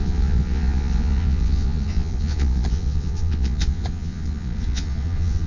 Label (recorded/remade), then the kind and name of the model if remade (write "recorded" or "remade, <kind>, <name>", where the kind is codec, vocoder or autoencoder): remade, vocoder, Vocos